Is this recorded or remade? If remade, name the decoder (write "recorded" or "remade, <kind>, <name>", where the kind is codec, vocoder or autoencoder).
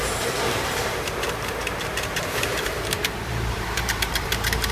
remade, vocoder, BigVGAN v2